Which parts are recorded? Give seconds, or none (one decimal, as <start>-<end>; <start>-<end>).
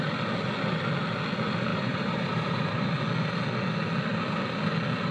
0.0-1.7; 2.9-5.1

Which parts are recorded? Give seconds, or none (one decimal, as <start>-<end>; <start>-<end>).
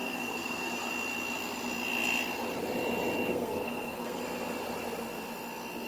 0.9-3.3; 4.2-5.9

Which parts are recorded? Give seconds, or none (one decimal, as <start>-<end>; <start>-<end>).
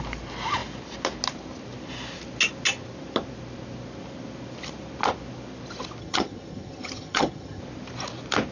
0.0-6.0; 7.6-8.5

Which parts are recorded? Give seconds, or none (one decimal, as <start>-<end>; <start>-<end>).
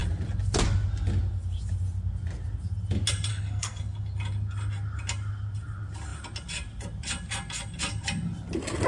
0.0-3.3; 3.8-8.9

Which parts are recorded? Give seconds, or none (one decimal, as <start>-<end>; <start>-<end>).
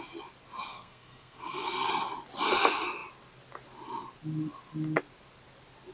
0.0-0.7; 1.9-5.9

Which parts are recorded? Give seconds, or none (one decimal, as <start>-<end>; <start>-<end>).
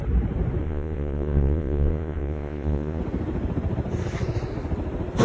0.0-0.6; 3.0-5.2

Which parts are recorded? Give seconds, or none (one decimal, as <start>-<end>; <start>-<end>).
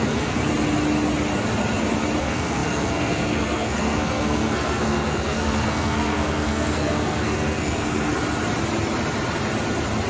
0.4-2.2; 8.1-10.1